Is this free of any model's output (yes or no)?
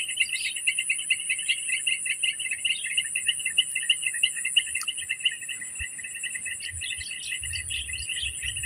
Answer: yes